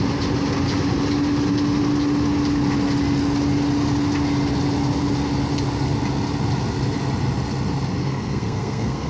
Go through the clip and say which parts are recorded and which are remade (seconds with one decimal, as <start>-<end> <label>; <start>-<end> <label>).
0.0-8.0 recorded; 8.0-9.1 remade